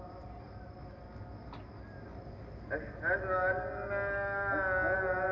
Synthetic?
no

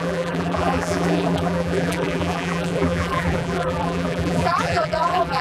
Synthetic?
yes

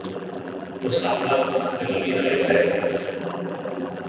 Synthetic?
yes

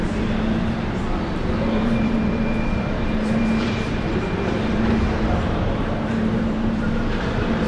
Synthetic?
yes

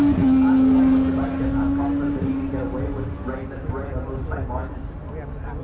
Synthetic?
no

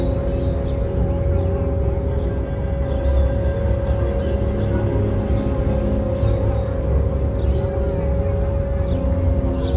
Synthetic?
no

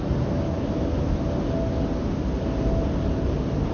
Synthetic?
no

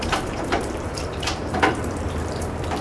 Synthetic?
yes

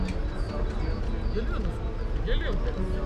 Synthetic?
no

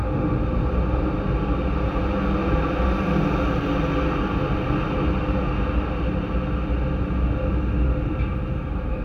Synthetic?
no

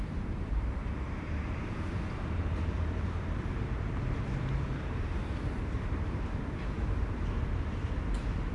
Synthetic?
yes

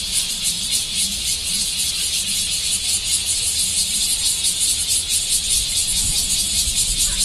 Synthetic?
no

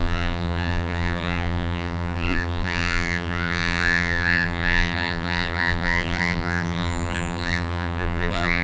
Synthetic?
yes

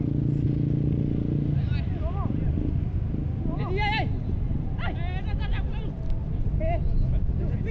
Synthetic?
no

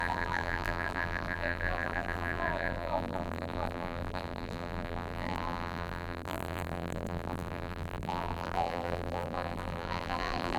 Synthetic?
yes